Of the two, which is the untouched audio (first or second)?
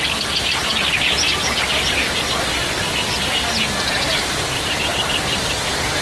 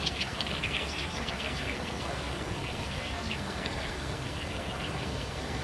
first